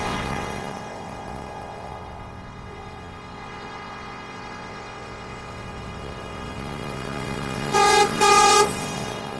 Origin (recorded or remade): remade